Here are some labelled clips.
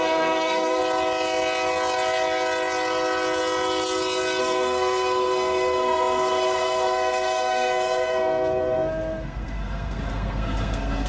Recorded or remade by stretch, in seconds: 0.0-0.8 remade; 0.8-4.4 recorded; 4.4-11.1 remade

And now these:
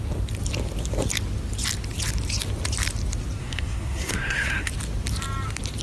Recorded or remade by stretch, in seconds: 0.0-3.4 recorded; 3.4-4.7 remade; 4.7-5.8 recorded

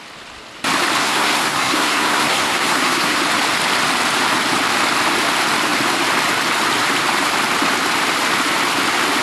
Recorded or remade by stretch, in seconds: 0.0-1.0 recorded; 1.0-3.2 remade; 3.2-9.2 recorded

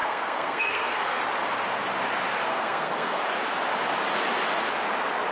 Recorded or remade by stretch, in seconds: 0.0-1.2 remade; 1.2-2.5 recorded; 2.5-3.2 remade; 3.2-5.3 recorded

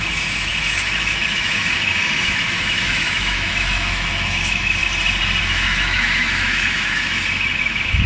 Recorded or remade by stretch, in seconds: 0.0-4.8 remade; 4.8-5.4 recorded; 5.4-8.1 remade

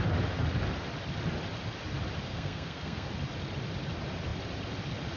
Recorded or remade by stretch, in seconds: 0.0-2.3 recorded; 2.3-3.1 remade; 3.1-5.2 recorded

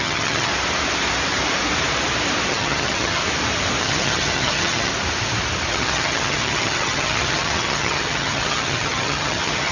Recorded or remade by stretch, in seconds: 0.0-0.5 remade; 0.5-2.5 recorded; 2.5-3.2 remade; 3.2-3.8 recorded; 3.8-4.9 remade; 4.9-5.7 recorded; 5.7-9.7 remade